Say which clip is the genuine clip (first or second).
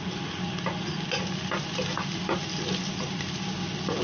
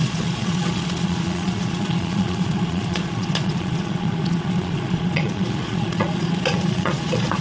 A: first